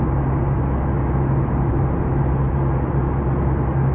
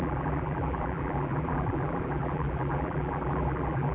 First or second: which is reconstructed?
second